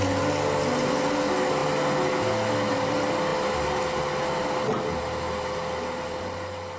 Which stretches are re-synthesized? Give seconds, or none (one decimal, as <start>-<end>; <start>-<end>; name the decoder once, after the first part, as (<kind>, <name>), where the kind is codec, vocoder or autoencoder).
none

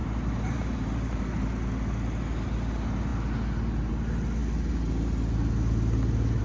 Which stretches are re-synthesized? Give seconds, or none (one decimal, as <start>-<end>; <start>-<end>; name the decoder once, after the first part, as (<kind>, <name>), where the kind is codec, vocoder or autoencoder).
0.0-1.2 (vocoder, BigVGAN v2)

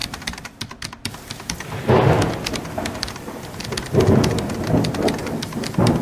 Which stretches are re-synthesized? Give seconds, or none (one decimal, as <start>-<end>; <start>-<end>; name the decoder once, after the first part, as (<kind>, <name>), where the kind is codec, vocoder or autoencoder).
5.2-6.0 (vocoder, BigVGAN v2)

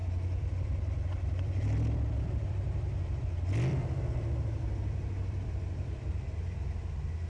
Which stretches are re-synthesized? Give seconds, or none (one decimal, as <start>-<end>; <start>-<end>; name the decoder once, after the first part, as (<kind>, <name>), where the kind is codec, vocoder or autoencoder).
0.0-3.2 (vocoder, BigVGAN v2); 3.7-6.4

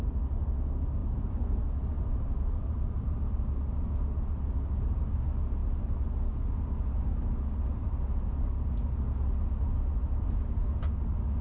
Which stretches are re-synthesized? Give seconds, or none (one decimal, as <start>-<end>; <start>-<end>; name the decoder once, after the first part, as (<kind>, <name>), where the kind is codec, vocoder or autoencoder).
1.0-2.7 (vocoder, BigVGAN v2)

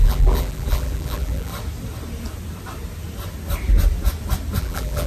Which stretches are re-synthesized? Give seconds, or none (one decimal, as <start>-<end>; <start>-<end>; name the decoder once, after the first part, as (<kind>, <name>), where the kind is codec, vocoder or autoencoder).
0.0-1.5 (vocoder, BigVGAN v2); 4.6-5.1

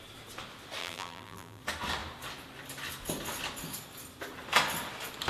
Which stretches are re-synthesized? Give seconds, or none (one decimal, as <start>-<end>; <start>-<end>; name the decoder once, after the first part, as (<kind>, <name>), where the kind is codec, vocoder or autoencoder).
0.8-1.6 (vocoder, BigVGAN v2)

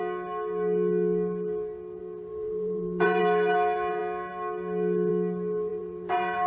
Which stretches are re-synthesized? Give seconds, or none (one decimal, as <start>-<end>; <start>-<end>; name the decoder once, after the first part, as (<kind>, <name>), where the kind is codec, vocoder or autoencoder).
2.0-3.2 (vocoder, BigVGAN v2); 5.7-6.5